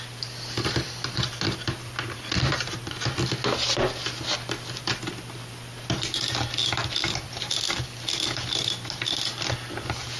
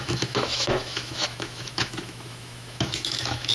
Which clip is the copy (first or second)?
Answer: second